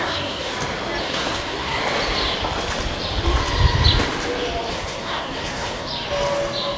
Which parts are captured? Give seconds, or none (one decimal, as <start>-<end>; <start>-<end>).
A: 0.5-1.0; 1.8-4.7; 5.9-6.8